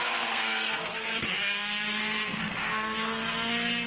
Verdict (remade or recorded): remade